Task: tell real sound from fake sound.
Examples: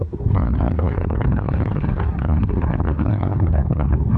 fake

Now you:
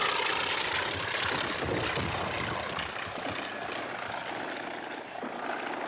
real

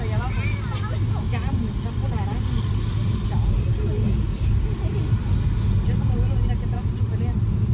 real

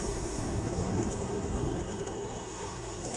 fake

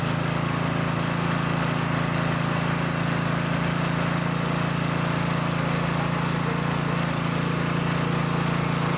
real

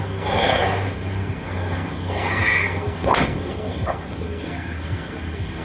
fake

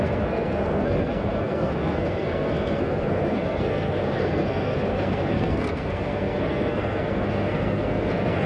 fake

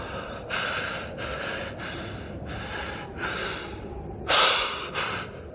real